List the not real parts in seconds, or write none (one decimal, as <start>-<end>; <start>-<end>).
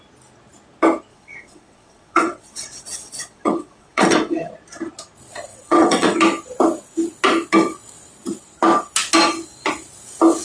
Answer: 1.1-4.5; 5.5-6.2